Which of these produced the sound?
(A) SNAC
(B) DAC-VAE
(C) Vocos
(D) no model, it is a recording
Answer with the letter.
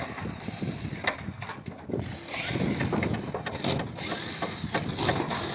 D